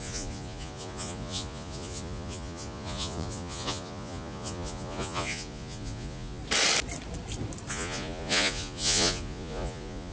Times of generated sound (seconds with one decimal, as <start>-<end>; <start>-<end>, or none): 0.0-6.4; 7.7-10.1